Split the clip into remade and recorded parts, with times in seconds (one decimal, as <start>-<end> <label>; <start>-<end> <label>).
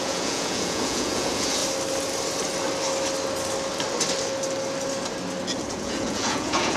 0.0-1.6 remade; 1.6-5.7 recorded; 5.7-6.8 remade